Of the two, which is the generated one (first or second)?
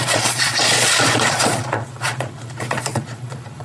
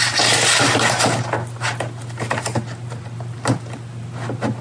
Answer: first